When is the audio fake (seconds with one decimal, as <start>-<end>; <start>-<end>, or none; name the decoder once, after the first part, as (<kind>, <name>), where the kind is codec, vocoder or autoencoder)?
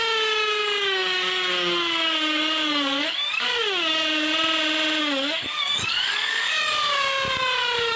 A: 0.0-4.3 (codec, DAC); 5.0-8.0